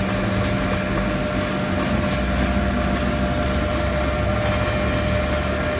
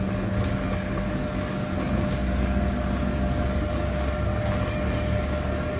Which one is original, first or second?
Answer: first